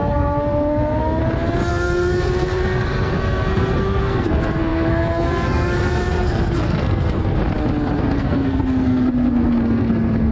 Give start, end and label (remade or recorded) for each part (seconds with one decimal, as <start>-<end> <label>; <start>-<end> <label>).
0.0-1.2 remade; 1.2-1.7 recorded; 1.7-7.4 remade; 7.4-8.0 recorded; 8.0-10.3 remade

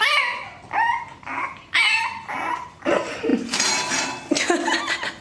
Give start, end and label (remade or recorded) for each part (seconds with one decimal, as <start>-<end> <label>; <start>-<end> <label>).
0.0-5.2 recorded

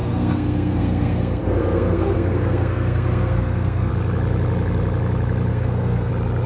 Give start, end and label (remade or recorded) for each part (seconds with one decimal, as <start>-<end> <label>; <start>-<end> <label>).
0.0-3.9 remade; 3.9-5.5 recorded; 5.5-6.1 remade; 6.1-6.5 recorded